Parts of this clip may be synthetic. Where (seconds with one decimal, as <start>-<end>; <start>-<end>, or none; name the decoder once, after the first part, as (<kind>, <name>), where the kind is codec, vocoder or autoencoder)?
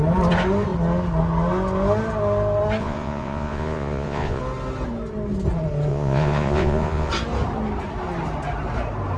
2.8-4.4 (vocoder, Vocos); 5.9-7.1